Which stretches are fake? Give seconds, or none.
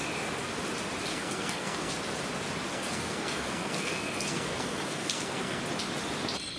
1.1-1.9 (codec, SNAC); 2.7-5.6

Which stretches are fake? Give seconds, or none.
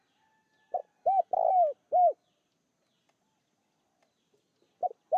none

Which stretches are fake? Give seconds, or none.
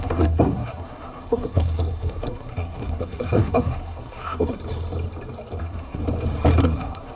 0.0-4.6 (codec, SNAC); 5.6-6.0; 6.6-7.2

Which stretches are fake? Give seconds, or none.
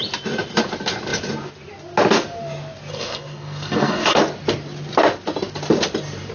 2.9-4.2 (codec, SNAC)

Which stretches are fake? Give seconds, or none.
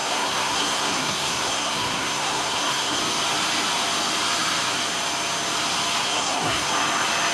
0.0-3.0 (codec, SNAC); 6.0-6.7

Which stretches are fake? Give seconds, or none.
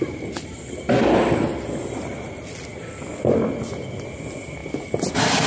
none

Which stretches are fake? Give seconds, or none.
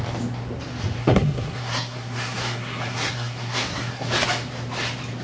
1.0-4.1 (codec, SNAC)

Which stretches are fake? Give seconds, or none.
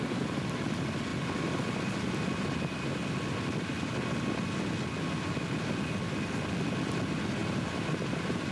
none